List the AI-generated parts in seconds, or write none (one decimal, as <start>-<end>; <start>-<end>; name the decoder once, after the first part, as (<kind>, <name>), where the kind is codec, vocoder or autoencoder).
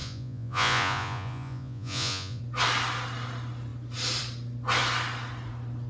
0.0-2.4 (vocoder, Vocos)